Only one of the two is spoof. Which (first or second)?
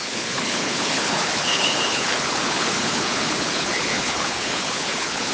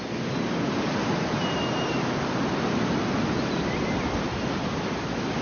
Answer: first